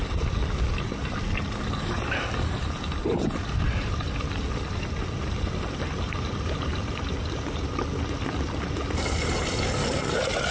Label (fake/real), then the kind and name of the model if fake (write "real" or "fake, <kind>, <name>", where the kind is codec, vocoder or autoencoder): real